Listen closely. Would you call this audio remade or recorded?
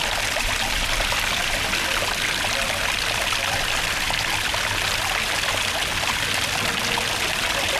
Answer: recorded